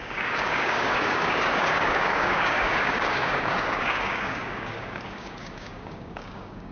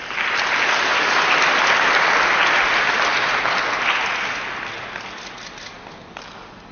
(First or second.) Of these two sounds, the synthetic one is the first